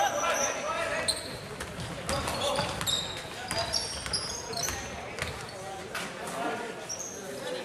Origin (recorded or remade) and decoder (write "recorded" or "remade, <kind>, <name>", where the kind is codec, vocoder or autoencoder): recorded